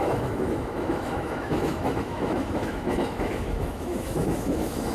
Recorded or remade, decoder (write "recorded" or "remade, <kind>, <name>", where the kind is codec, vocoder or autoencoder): remade, autoencoder, DAC-VAE